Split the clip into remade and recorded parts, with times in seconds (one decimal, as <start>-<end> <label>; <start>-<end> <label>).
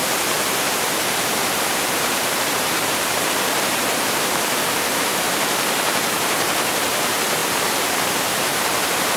0.0-0.7 recorded; 0.7-9.2 remade